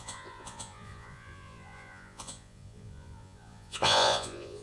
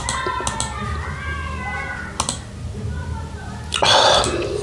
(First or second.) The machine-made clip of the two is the first